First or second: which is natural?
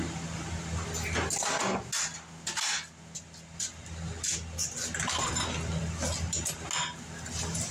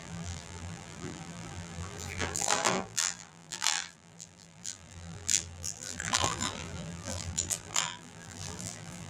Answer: first